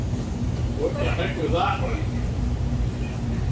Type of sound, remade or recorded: remade